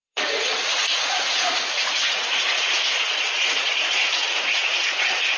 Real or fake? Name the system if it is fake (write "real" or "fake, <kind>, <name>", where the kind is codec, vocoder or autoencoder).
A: fake, vocoder, Vocos